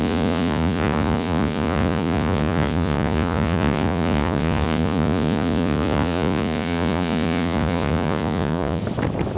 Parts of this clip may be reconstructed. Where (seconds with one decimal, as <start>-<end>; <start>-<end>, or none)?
0.0-8.8